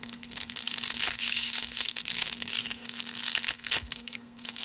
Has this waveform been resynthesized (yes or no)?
yes